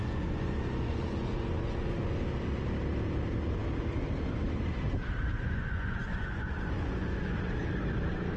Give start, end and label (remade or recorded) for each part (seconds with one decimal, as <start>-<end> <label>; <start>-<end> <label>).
0.0-2.1 remade; 2.1-5.3 recorded; 5.3-7.5 remade; 7.5-8.4 recorded